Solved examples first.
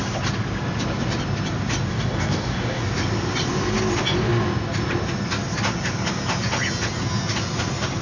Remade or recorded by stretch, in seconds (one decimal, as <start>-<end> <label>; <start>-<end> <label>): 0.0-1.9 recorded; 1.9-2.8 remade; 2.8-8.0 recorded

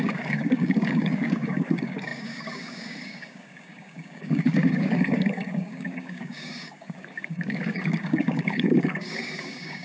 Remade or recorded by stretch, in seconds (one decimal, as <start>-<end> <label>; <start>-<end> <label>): 0.0-9.8 remade

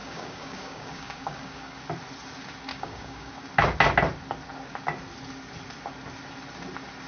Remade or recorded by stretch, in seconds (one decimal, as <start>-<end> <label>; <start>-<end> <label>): 0.0-1.8 remade; 1.8-2.7 recorded; 2.7-3.3 remade; 3.3-7.1 recorded

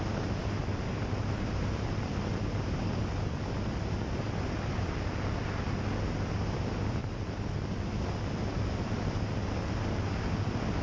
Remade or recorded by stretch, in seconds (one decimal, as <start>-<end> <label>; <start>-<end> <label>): 0.0-10.8 recorded